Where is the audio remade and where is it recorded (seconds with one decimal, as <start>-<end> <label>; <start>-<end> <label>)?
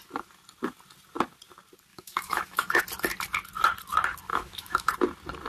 0.0-1.9 recorded; 1.9-2.8 remade; 2.8-4.3 recorded; 4.3-4.9 remade; 4.9-5.5 recorded